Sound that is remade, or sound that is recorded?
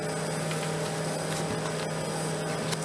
recorded